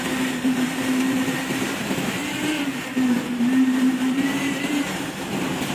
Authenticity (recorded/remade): remade